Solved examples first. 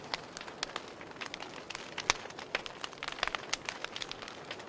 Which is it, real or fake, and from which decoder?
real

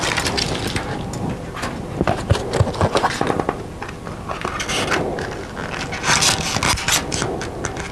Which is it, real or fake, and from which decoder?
real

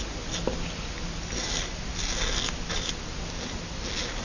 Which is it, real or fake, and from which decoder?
real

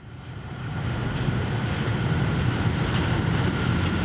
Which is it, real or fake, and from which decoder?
fake, vocoder, BigVGAN v2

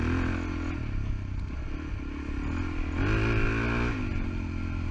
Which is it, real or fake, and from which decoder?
real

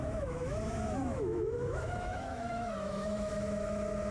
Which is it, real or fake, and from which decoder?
fake, autoencoder, DAC-VAE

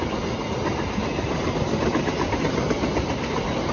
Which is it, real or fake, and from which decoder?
real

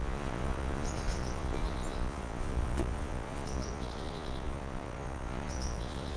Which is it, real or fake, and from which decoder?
fake, vocoder, Vocos